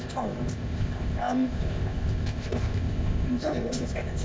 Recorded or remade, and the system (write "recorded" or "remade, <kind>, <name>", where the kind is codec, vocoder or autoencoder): remade, codec, ZipCodec